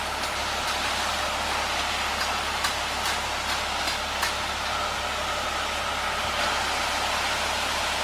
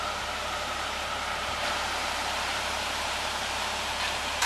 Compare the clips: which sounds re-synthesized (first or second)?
second